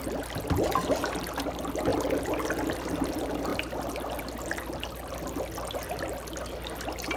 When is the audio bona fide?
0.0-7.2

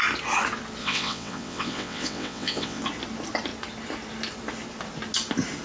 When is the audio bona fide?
0.0-0.8; 2.8-5.6

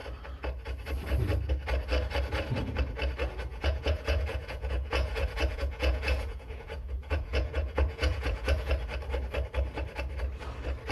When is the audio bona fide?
0.0-3.5; 8.7-10.9

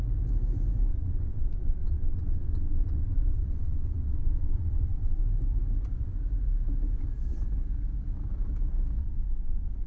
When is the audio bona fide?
0.0-0.9; 5.2-9.0

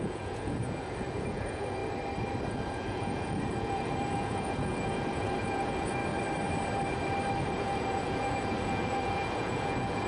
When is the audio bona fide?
1.8-2.5; 6.0-7.4

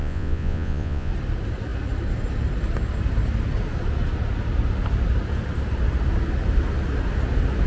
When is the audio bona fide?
1.1-7.7

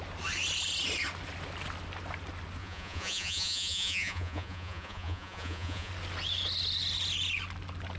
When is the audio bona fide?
0.0-2.6; 5.9-8.0